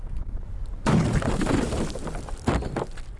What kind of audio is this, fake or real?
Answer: real